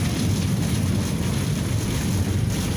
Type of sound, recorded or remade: remade